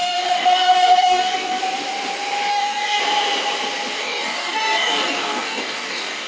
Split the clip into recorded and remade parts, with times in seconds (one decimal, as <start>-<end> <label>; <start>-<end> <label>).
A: 0.0-1.6 remade; 1.6-2.5 recorded; 2.5-3.0 remade; 3.0-4.0 recorded; 4.0-6.3 remade